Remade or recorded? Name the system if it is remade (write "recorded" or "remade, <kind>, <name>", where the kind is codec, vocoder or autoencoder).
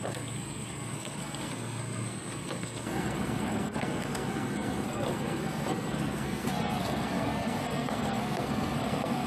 remade, codec, SNAC